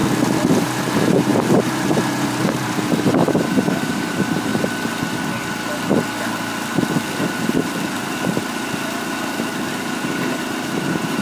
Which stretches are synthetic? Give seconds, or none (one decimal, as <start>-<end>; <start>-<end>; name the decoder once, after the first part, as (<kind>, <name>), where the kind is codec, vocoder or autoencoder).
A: 0.5-4.5 (vocoder, BigVGAN v2); 9.7-11.2